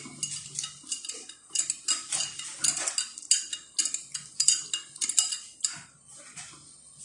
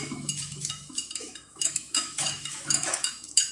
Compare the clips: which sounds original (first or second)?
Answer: first